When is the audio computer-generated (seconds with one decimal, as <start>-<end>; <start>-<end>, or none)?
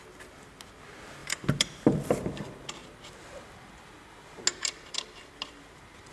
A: 1.2-2.4; 4.5-6.1